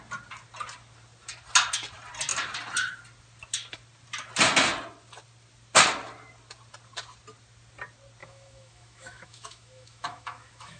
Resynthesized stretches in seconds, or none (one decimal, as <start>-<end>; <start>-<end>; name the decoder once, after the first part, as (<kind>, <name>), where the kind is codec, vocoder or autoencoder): 8.2-10.8 (autoencoder, DAC-VAE)